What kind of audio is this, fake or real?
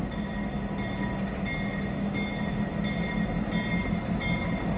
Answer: real